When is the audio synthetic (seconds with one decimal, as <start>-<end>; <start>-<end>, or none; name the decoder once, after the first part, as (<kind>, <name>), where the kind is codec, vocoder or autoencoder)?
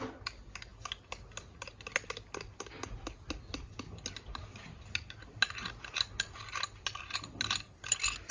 none